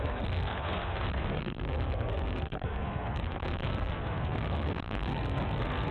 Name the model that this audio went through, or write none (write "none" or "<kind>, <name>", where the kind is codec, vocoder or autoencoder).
codec, SNAC